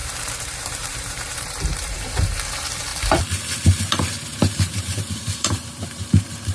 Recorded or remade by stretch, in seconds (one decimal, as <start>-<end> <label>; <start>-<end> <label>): 0.0-2.9 remade; 2.9-4.2 recorded; 4.2-6.5 remade